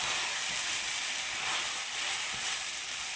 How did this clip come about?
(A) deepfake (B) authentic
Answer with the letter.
B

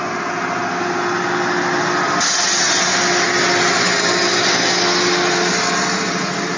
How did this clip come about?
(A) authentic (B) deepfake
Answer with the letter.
A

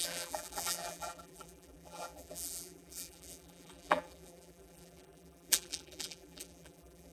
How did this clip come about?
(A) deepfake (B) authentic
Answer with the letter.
A